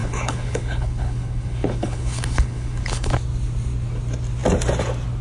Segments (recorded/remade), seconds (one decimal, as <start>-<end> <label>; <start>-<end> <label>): 0.0-3.1 remade; 3.1-5.2 recorded